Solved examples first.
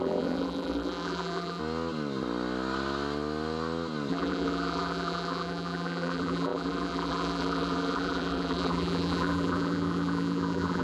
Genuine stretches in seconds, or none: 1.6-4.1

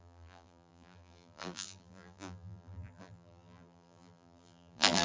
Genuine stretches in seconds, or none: none

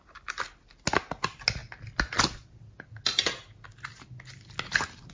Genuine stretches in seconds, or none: 0.0-5.1

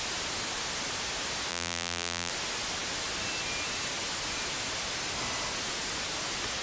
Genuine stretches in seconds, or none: 0.0-1.5; 2.3-6.6

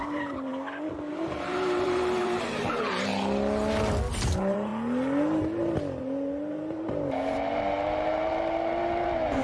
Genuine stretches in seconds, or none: 0.5-1.1; 3.1-4.0; 4.7-6.5

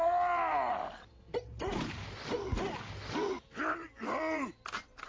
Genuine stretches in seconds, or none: 0.0-2.0; 2.6-5.1